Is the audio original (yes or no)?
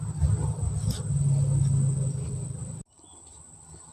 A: yes